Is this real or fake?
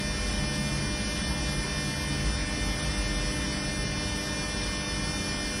real